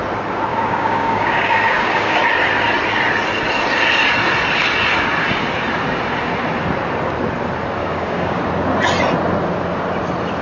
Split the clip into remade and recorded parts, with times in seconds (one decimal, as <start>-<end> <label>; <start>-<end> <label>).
0.0-0.5 recorded; 0.5-2.2 remade; 2.2-7.8 recorded; 7.8-8.4 remade; 8.4-10.4 recorded